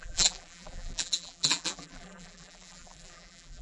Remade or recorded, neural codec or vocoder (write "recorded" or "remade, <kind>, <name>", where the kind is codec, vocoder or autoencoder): remade, vocoder, BigVGAN v2